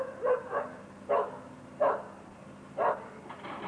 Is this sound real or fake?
real